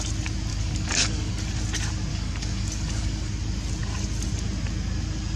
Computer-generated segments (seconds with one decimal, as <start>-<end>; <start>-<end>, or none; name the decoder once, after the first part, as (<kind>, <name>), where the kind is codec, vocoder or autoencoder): 0.5-1.3 (codec, DAC); 2.1-3.3

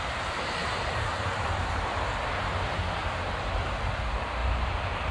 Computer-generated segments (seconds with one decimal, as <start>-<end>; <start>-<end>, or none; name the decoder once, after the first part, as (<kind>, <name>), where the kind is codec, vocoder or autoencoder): 0.6-3.7 (vocoder, BigVGAN v2)

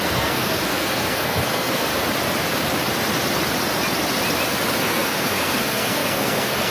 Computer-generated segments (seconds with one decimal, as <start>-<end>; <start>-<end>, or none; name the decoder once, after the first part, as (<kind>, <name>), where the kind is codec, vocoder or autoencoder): 0.0-1.9 (codec, SNAC); 4.8-6.7